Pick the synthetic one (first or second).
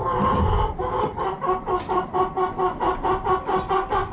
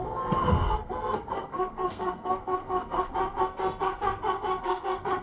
second